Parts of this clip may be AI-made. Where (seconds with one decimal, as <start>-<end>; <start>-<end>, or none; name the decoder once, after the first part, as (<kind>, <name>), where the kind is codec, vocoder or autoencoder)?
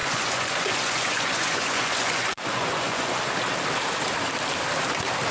0.0-3.2 (vocoder, Vocos)